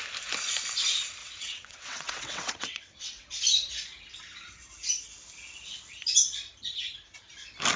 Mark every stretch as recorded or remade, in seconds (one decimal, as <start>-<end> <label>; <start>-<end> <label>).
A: 0.0-1.2 recorded; 1.2-3.4 remade; 3.4-7.8 recorded